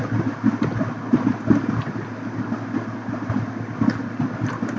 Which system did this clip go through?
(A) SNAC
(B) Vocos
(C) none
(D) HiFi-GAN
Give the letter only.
C